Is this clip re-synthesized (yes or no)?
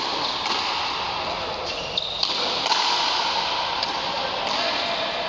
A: no